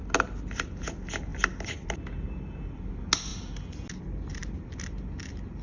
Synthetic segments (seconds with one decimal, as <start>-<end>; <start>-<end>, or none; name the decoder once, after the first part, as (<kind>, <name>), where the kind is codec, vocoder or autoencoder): none

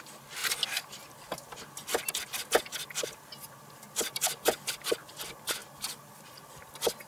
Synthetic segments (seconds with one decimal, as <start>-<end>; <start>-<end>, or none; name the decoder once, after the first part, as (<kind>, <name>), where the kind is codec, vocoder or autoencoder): none

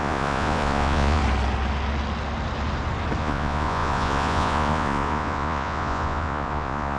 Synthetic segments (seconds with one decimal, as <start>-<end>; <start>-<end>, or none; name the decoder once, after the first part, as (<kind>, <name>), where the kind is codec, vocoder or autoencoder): 0.0-1.2 (vocoder, Vocos); 3.2-7.0

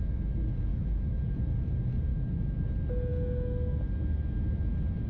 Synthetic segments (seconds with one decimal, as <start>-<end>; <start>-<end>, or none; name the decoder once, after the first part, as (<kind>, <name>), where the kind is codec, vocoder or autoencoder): 0.7-1.2 (autoencoder, DAC-VAE); 2.1-2.6; 3.1-3.9

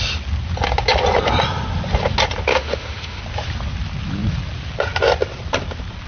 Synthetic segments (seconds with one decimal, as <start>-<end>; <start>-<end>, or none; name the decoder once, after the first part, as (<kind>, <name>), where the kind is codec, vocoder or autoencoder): 2.5-3.2 (autoencoder, DAC-VAE)

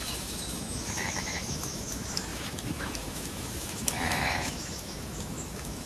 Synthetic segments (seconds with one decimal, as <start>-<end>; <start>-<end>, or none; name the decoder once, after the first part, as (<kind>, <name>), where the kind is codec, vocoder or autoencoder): 0.0-5.9 (autoencoder, DAC-VAE)